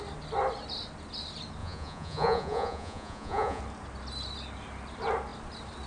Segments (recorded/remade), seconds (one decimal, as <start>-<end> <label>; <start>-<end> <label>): 0.0-1.6 recorded; 1.6-3.6 remade; 3.6-5.9 recorded